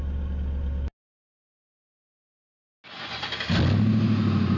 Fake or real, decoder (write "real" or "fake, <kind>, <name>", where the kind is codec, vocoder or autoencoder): real